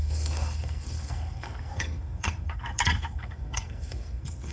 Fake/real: fake